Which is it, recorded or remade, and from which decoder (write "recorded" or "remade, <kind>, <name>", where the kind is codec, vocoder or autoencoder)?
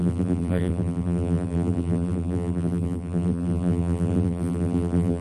remade, vocoder, BigVGAN v2